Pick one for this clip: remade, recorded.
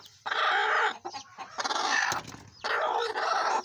recorded